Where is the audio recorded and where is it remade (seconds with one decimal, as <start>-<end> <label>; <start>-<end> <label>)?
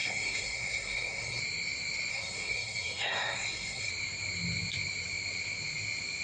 0.0-1.4 remade; 1.4-2.1 recorded; 2.1-3.9 remade; 3.9-6.2 recorded